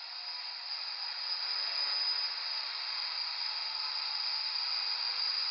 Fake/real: real